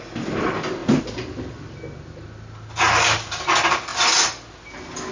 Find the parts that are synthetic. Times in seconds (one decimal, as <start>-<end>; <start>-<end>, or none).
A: none